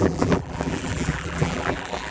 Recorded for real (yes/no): no